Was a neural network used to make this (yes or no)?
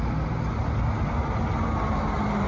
no